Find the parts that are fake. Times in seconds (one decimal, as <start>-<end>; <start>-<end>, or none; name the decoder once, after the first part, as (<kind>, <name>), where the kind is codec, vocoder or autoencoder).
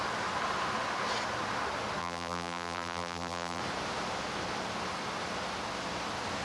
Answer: 2.0-3.6 (vocoder, BigVGAN v2)